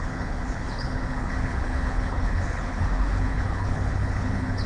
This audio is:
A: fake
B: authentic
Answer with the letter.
A